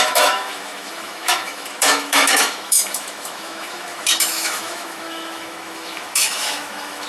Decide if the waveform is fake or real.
fake